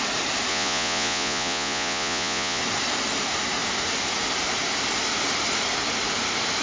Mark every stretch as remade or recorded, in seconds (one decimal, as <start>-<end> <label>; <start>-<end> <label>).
0.0-0.5 recorded; 0.5-2.6 remade; 2.6-6.6 recorded